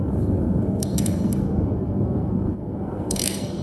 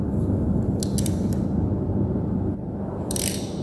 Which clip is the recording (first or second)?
second